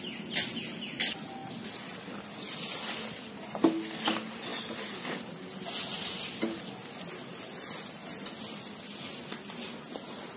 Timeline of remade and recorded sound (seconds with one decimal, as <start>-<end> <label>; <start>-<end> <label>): 0.0-10.4 recorded